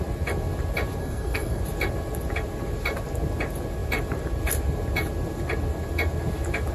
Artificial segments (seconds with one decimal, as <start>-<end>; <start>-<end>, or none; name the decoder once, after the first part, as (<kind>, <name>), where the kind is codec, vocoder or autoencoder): 1.0-1.6 (codec, SNAC)